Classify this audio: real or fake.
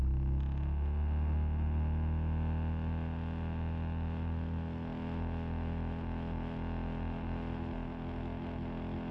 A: real